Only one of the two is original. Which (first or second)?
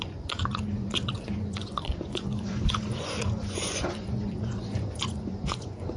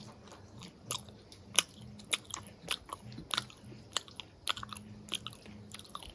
second